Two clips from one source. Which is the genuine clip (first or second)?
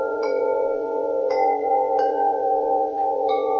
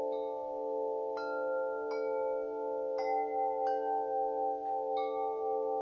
second